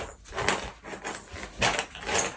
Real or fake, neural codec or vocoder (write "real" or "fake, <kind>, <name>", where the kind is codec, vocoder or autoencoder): real